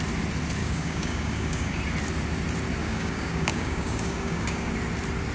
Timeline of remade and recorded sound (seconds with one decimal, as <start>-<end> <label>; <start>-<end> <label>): 0.0-0.6 recorded; 0.6-1.8 remade; 1.8-2.8 recorded; 2.8-4.7 remade; 4.7-5.3 recorded